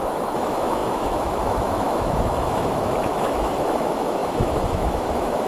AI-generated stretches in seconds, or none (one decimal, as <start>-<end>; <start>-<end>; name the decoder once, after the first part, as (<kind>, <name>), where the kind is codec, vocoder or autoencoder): 0.0-5.5 (autoencoder, DAC-VAE)